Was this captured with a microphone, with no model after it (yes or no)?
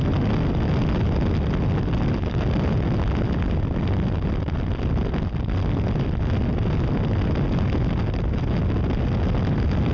yes